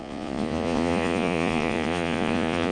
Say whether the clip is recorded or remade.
remade